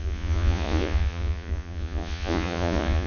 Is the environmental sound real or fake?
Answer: fake